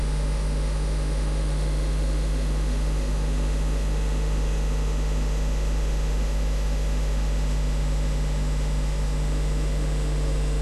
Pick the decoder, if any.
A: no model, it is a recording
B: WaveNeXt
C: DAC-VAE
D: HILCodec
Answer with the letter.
C